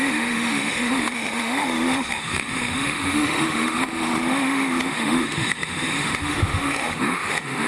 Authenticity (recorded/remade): remade